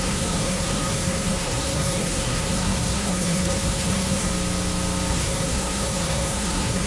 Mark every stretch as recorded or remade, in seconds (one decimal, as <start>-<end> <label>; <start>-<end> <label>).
0.0-4.3 remade; 4.3-5.1 recorded; 5.1-6.9 remade